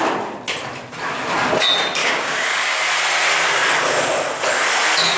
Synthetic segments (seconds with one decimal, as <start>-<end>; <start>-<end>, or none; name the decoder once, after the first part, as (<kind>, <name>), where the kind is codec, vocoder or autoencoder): 2.0-2.8 (codec, DAC)